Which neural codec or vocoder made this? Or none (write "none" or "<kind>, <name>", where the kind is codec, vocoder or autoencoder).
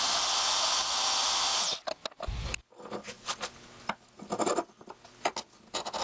none